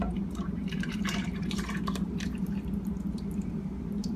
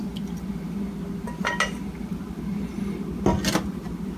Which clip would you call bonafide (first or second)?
second